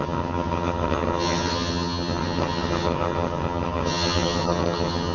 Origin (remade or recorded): remade